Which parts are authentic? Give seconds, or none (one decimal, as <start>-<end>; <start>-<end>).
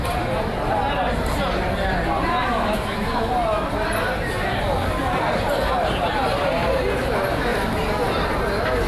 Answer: 0.0-2.4; 3.3-8.9